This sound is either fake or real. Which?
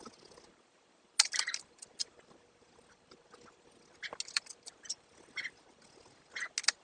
real